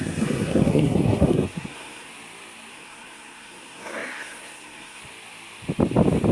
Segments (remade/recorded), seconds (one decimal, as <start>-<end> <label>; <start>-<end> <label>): 0.0-2.1 remade; 2.1-2.7 recorded; 2.7-5.0 remade; 5.0-6.3 recorded